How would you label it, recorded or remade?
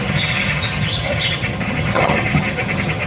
remade